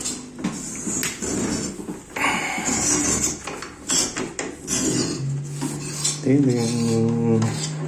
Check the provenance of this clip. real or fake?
real